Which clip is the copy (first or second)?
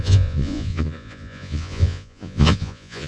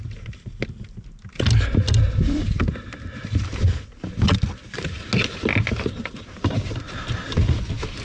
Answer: first